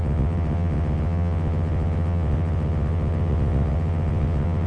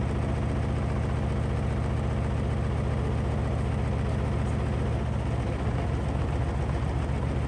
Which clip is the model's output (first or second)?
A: first